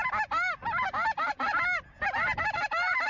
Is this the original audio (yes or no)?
yes